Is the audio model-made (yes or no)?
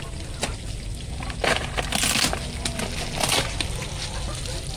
no